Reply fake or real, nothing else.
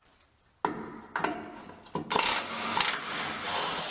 real